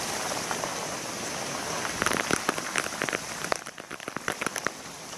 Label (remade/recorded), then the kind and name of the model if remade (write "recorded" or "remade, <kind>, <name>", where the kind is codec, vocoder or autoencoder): remade, vocoder, BigVGAN v2